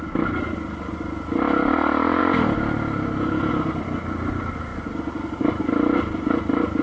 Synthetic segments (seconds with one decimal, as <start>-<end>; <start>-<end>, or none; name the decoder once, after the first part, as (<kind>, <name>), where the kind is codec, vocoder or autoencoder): none